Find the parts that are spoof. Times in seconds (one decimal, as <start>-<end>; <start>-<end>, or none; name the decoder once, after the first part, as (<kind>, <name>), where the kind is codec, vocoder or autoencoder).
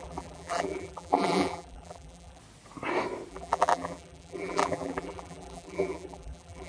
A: 0.0-2.4 (vocoder, BigVGAN v2); 3.3-6.7